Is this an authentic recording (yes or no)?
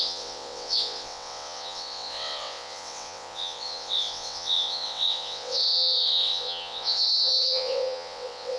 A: no